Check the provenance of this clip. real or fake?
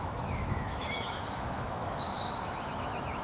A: fake